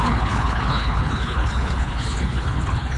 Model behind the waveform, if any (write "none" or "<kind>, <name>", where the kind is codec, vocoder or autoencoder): codec, HILCodec